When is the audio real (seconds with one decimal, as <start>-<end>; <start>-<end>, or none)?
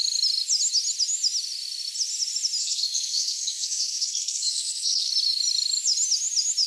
0.0-2.6; 5.1-6.7